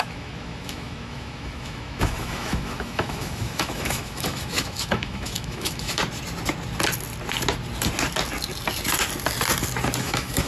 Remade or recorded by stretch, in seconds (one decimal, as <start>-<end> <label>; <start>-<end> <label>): 0.0-6.0 remade; 6.0-10.0 recorded; 10.0-10.5 remade